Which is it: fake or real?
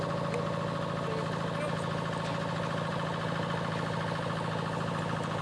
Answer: real